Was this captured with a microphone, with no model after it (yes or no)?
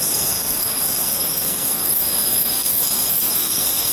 no